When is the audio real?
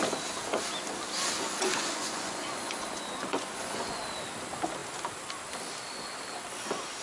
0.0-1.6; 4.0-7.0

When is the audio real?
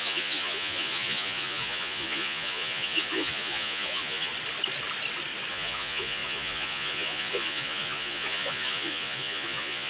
4.3-5.5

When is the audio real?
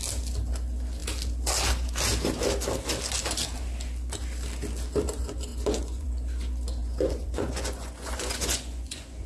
0.0-5.5; 6.1-6.8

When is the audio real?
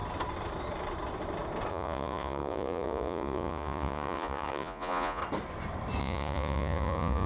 0.0-1.7; 5.2-6.0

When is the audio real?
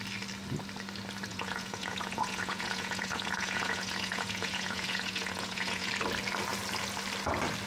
0.0-1.3; 5.9-7.7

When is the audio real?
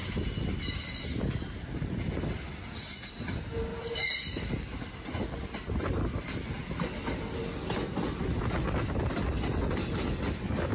0.0-10.7